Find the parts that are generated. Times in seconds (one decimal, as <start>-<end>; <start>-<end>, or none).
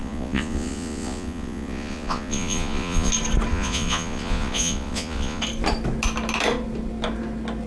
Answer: 0.0-3.1; 3.5-5.4